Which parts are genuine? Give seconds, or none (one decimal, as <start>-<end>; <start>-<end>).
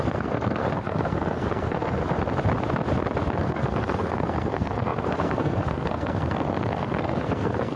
2.0-3.4